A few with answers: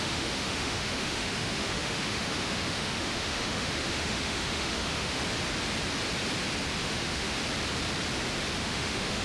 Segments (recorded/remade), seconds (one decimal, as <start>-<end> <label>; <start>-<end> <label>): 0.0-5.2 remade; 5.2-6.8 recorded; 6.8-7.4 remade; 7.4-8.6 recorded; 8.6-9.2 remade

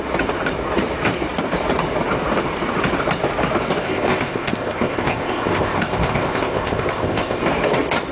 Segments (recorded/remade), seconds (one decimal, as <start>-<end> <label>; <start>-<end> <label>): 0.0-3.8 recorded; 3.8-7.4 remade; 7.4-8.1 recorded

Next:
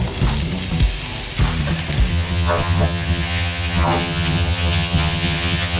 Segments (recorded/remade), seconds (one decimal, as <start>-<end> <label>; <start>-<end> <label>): 0.0-2.1 recorded; 2.1-5.8 remade

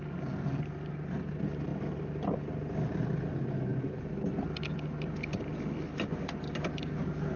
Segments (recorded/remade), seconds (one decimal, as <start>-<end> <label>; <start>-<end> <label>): 0.0-7.4 recorded

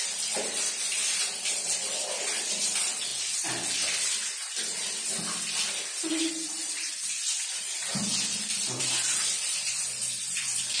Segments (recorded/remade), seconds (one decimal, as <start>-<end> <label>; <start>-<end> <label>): 0.0-3.1 remade; 3.1-6.3 recorded; 6.3-10.8 remade

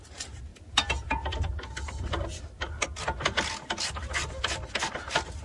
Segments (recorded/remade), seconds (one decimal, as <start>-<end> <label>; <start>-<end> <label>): 0.0-5.4 recorded